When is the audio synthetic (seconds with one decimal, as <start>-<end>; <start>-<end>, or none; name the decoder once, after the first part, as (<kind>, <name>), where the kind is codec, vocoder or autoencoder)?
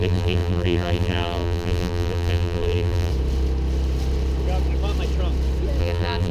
0.0-3.1 (vocoder, BigVGAN v2); 5.8-6.3